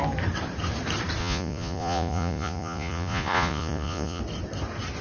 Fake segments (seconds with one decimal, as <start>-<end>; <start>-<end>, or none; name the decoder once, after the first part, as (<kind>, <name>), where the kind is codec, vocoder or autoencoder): 1.2-4.2 (vocoder, Vocos)